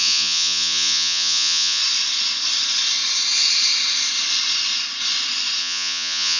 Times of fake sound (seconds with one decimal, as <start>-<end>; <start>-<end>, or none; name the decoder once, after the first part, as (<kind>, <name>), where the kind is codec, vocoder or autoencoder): 0.0-1.8 (vocoder, Vocos); 5.6-6.4